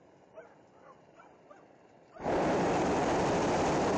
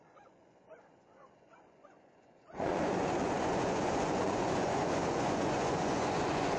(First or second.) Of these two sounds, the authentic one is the first